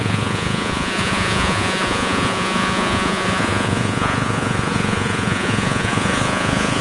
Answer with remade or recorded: remade